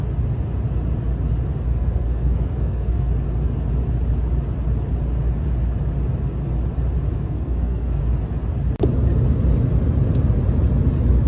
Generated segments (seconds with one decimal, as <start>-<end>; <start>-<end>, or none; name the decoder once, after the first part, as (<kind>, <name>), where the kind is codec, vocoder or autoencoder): 1.7-3.1 (codec, SNAC); 7.1-8.0